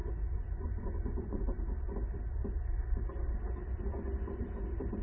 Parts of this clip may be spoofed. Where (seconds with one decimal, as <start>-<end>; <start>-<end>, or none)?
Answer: 0.0-1.4